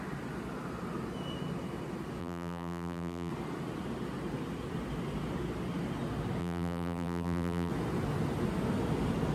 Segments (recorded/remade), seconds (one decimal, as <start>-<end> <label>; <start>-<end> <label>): 0.0-2.2 recorded; 2.2-3.3 remade; 3.3-6.4 recorded; 6.4-7.7 remade; 7.7-9.3 recorded